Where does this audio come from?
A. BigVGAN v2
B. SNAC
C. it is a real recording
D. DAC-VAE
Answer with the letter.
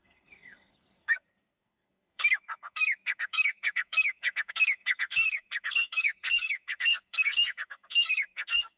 B